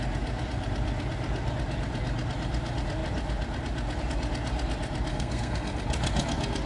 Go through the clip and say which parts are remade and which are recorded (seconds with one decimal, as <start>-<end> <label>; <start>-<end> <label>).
0.0-5.1 recorded; 5.1-5.8 remade; 5.8-6.7 recorded